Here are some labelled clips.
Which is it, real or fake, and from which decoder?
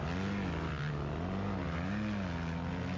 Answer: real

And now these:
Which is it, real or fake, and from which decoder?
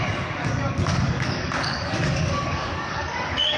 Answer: fake, codec, DAC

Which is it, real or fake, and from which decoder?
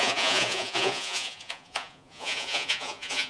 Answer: fake, vocoder, Vocos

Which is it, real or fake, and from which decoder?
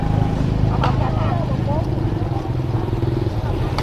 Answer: real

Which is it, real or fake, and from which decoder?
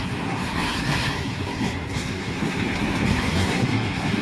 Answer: fake, codec, SNAC